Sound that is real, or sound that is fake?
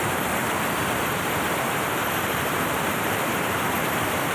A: fake